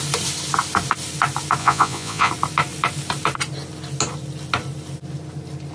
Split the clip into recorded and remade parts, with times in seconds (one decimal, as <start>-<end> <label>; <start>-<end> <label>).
0.0-1.6 recorded; 1.6-2.3 remade; 2.3-5.7 recorded